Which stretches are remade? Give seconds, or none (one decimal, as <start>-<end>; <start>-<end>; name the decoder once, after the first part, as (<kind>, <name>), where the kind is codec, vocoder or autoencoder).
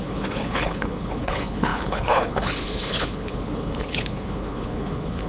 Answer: 0.0-5.3 (codec, HILCodec)